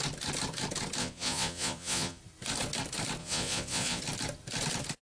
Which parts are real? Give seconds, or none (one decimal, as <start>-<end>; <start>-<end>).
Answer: 0.0-1.0; 2.2-3.2; 4.0-5.0